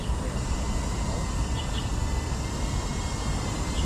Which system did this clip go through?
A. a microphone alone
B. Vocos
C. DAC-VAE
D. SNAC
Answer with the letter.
A